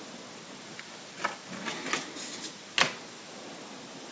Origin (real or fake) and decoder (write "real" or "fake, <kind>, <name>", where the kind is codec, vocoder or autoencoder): real